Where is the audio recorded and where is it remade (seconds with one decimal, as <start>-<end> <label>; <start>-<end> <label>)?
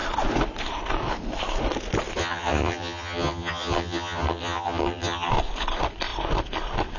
0.0-2.2 recorded; 2.2-5.3 remade; 5.3-7.0 recorded